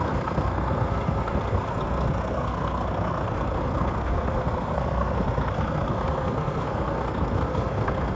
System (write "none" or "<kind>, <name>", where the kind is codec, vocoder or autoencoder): codec, SNAC